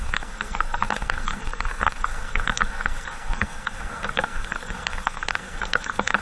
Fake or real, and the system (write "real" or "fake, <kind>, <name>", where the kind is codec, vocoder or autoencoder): fake, codec, SNAC